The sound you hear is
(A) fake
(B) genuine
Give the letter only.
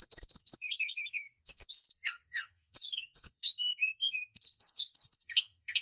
A